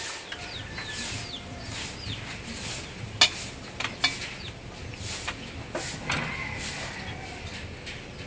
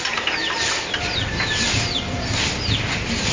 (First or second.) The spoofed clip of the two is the second